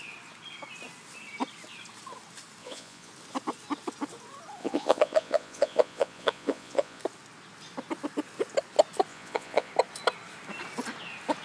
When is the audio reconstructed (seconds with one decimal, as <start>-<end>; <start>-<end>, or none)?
2.6-3.1; 4.6-7.0; 9.1-9.7